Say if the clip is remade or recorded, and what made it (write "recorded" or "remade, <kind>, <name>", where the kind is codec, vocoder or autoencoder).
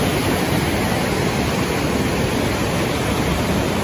recorded